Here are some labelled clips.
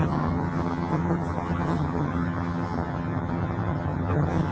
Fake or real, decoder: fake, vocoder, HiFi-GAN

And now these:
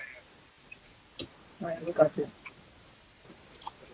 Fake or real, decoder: real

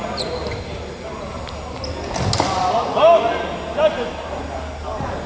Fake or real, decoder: real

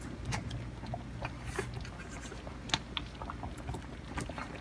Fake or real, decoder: real